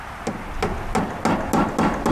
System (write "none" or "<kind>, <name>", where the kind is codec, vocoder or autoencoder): none